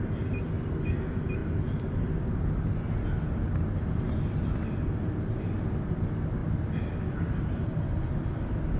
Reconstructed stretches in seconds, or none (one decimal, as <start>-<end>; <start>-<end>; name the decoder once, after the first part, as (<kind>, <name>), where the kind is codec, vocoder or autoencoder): none